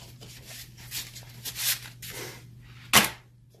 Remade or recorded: recorded